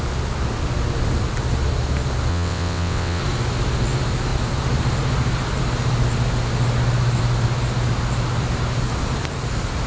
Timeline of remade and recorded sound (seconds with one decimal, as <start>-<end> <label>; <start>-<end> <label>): 0.0-2.3 recorded; 2.3-3.2 remade; 3.2-9.9 recorded